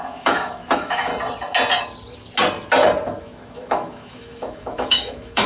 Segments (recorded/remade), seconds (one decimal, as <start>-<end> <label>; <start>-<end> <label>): 0.0-1.1 remade; 1.1-3.2 recorded; 3.2-5.5 remade